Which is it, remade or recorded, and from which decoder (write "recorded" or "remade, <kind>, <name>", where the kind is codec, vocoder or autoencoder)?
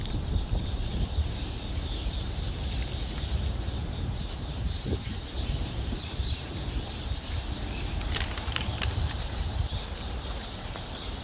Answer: remade, vocoder, BigVGAN v2